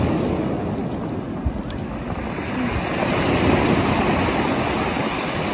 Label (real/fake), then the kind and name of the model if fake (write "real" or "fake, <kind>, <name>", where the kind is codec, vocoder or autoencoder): real